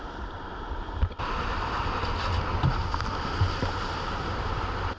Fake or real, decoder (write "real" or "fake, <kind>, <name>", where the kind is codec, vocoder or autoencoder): real